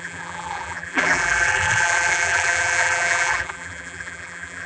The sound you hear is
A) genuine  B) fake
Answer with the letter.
B